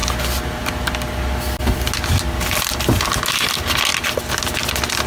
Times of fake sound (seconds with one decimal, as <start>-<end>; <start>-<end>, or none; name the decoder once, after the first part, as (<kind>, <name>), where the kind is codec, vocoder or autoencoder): none